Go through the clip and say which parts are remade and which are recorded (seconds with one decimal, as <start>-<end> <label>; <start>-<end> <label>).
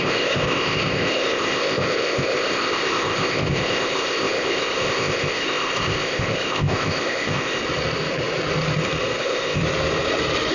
0.0-7.6 remade; 7.6-9.2 recorded; 9.2-9.6 remade; 9.6-10.5 recorded